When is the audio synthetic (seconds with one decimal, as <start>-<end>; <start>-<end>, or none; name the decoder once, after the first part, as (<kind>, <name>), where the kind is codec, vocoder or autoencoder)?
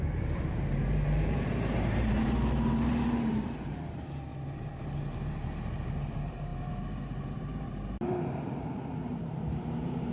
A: 0.0-4.3 (vocoder, BigVGAN v2); 6.1-10.1